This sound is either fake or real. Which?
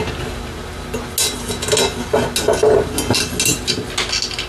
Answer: real